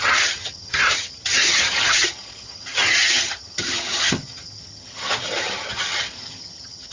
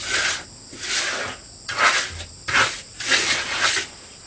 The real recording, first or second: second